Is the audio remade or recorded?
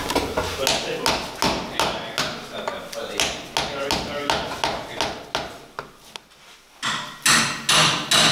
recorded